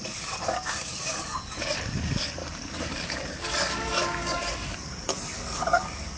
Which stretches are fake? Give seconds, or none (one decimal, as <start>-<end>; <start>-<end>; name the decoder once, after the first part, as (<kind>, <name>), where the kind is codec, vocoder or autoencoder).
0.0-6.2 (codec, DAC)